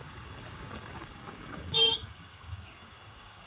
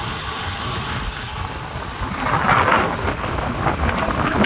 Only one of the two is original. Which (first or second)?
second